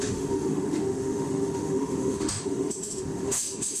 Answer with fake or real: fake